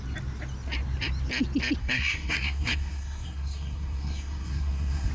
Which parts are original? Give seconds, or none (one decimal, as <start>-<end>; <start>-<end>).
0.0-1.8